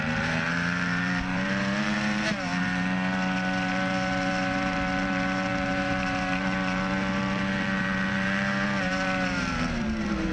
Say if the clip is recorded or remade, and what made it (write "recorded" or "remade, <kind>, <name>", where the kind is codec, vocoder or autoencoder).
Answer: remade, vocoder, BigVGAN v2